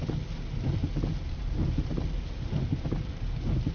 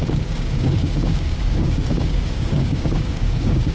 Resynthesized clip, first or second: second